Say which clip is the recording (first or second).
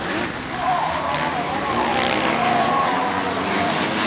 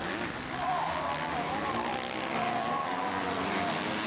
second